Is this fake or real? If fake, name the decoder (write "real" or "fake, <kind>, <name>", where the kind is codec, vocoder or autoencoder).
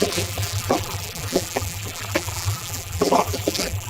fake, vocoder, BigVGAN v2